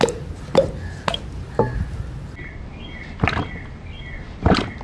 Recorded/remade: recorded